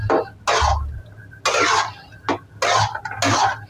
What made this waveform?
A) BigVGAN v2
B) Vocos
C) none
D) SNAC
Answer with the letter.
C